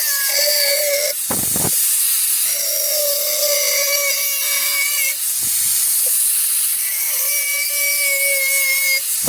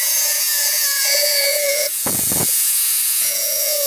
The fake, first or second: second